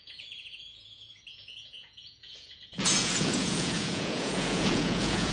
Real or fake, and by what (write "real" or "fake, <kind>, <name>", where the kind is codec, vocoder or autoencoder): fake, vocoder, Vocos